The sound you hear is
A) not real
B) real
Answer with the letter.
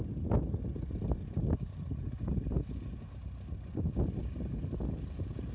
B